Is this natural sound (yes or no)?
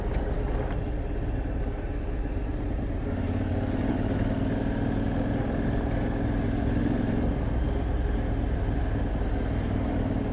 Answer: yes